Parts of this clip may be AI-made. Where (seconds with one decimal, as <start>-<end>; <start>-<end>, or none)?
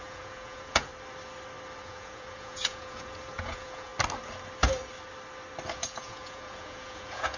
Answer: 0.0-0.9; 1.8-3.9; 5.7-7.4